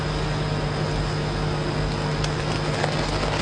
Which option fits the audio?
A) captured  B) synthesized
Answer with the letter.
A